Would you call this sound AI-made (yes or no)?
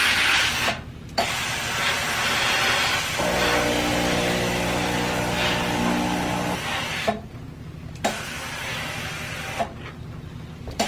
no